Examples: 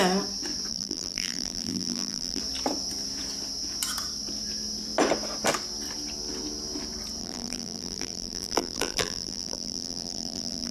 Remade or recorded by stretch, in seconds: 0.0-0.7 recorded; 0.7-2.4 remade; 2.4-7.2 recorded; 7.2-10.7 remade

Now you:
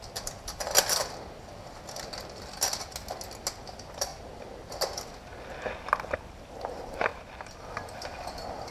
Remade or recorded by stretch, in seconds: 0.0-1.0 remade; 1.0-3.6 recorded; 3.6-4.1 remade; 4.1-6.4 recorded; 6.4-8.7 remade

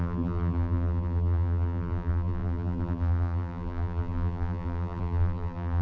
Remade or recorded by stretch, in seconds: 0.0-5.8 remade